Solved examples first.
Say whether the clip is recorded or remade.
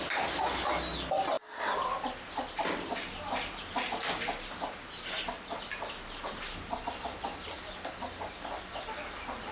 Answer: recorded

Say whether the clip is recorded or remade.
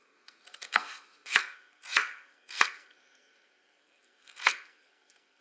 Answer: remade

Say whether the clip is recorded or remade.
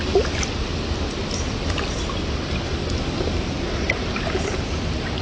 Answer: recorded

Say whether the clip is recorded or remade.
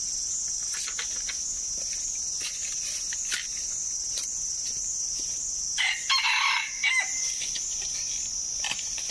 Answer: recorded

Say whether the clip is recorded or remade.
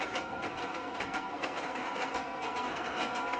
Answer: remade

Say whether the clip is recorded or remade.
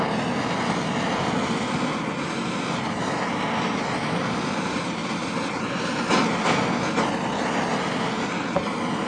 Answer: recorded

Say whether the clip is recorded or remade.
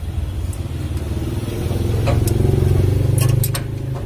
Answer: recorded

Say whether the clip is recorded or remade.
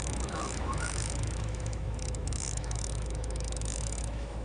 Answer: remade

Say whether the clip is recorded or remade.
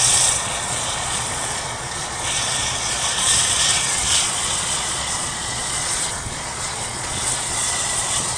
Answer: remade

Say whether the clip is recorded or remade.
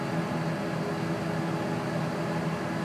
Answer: recorded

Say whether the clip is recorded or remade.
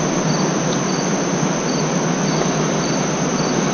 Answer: recorded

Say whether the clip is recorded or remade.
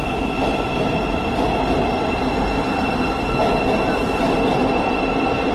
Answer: recorded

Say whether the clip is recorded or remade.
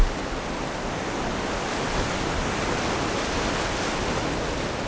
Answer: recorded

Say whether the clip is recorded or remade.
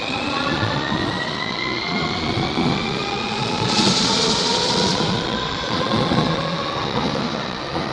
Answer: remade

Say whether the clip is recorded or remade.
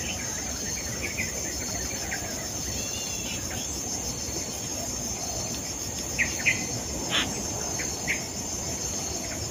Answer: recorded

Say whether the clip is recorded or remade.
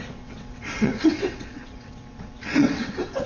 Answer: remade